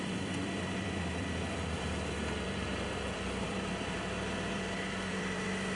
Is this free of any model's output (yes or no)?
no